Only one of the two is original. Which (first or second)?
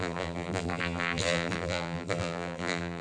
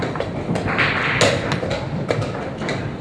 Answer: second